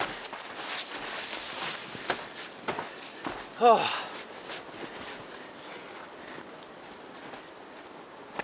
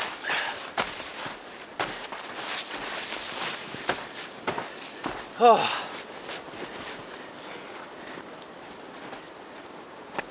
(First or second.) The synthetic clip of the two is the second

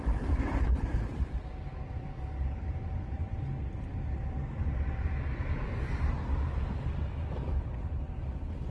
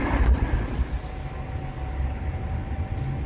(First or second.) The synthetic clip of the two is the first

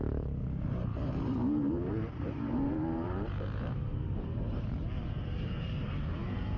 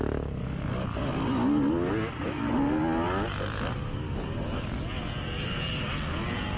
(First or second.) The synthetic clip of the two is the first